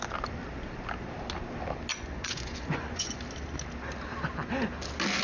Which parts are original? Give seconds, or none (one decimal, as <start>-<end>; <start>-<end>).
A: 0.0-1.9; 3.2-5.2